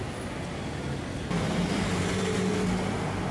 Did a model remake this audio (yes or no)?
no